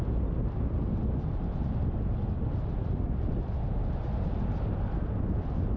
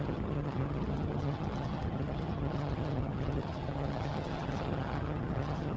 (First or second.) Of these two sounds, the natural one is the first